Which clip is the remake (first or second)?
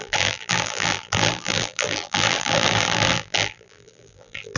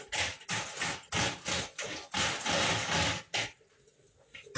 first